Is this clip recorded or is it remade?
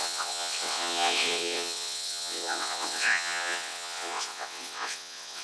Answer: remade